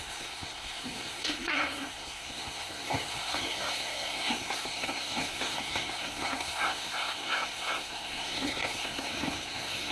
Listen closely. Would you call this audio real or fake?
fake